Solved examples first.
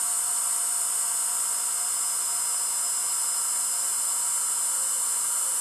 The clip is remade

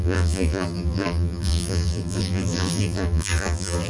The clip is remade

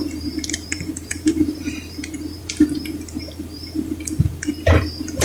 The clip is remade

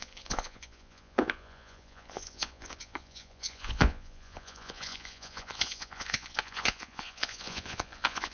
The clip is remade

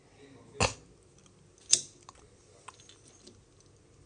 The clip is recorded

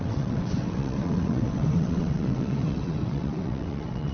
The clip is remade